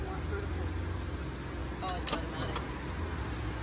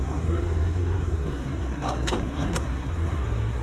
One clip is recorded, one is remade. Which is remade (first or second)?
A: second